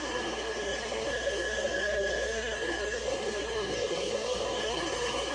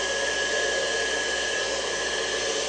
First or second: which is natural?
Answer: second